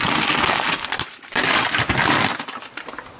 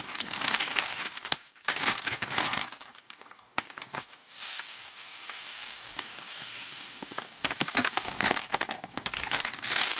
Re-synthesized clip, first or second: second